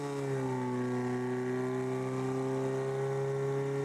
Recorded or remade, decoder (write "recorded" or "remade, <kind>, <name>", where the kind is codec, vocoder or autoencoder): recorded